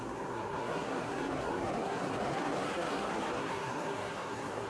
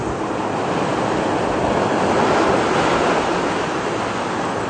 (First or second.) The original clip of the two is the second